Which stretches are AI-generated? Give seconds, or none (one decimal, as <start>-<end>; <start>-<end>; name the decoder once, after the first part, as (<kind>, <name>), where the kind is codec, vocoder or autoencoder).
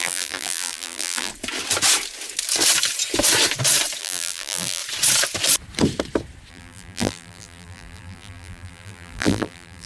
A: 0.0-1.3 (vocoder, BigVGAN v2); 4.0-4.8; 6.5-9.9